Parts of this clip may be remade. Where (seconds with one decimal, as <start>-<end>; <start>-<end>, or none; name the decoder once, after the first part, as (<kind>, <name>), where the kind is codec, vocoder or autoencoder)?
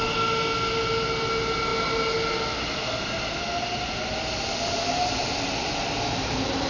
none